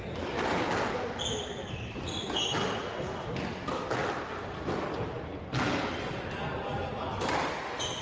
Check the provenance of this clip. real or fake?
real